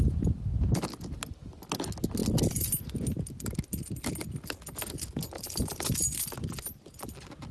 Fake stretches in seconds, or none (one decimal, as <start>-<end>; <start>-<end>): none